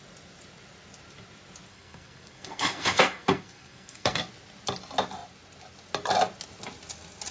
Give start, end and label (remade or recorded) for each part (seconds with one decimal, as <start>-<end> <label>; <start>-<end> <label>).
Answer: 0.0-1.7 recorded; 1.7-4.2 remade; 4.2-7.3 recorded